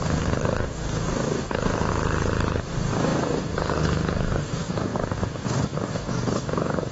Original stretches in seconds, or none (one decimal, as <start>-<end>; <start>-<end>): 1.9-2.6